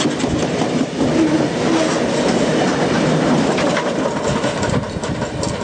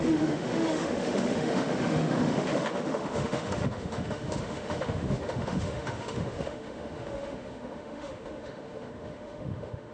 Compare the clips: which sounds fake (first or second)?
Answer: second